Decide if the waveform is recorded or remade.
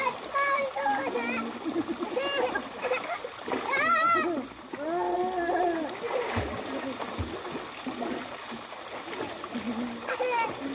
recorded